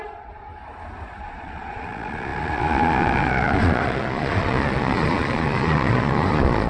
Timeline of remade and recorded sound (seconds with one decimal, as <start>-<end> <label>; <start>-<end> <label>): 0.0-0.5 remade; 0.5-1.2 recorded; 1.2-6.7 remade